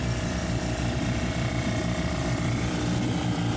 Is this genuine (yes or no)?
no